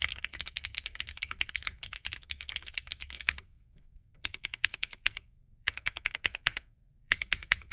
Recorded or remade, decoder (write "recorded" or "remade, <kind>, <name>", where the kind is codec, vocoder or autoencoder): remade, codec, SNAC